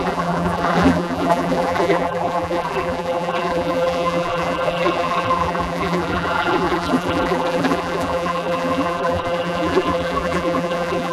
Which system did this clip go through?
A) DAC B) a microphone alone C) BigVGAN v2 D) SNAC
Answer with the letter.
C